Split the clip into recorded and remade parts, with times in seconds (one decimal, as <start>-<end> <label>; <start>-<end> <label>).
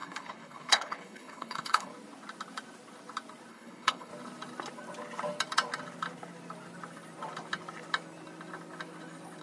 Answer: 0.0-1.9 remade; 1.9-3.5 recorded; 3.5-4.1 remade; 4.1-9.4 recorded